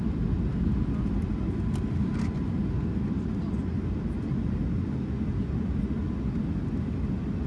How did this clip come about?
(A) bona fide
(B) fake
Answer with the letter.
A